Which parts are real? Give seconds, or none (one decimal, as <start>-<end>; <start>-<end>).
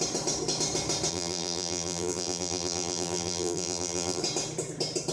0.0-1.1; 4.2-5.1